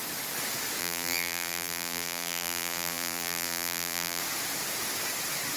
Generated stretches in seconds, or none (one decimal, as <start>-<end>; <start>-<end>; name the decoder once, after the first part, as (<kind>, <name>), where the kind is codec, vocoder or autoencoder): 0.8-4.2 (vocoder, BigVGAN v2)